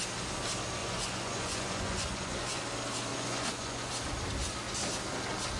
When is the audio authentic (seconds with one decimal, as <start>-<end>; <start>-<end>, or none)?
0.0-0.8; 2.6-3.1; 3.9-5.6